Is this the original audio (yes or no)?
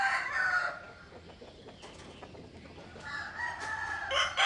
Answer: yes